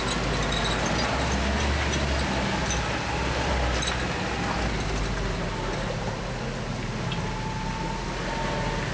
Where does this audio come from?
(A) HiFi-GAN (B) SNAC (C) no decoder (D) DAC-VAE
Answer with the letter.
C